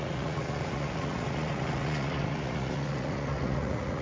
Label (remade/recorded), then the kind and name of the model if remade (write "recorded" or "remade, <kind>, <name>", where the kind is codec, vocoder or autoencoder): remade, vocoder, Vocos